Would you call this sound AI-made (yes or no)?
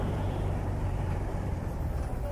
yes